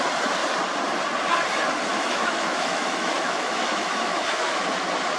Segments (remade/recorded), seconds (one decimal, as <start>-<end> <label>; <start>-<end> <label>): 0.0-1.9 recorded; 1.9-4.6 remade; 4.6-5.2 recorded